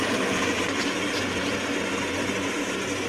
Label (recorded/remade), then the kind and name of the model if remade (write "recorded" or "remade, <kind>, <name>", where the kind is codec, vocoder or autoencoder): remade, vocoder, BigVGAN v2